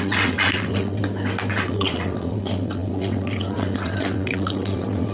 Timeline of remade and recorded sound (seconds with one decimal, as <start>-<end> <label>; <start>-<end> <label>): 0.0-1.0 remade; 1.0-1.5 recorded; 1.5-5.1 remade